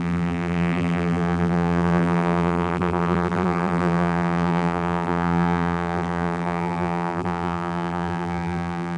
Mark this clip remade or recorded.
remade